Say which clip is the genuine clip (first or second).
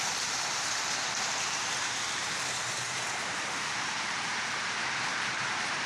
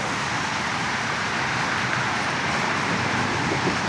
second